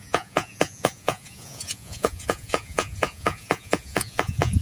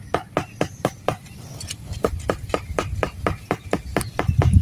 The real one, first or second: second